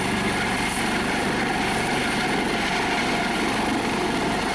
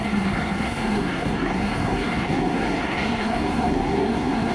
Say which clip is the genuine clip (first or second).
first